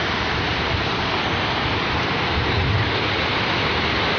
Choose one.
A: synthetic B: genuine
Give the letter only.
B